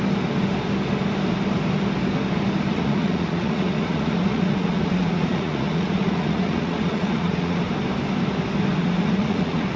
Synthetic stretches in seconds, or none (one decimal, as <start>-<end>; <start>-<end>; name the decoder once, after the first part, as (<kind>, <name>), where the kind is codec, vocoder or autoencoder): 2.7-7.6 (vocoder, Vocos); 8.8-9.8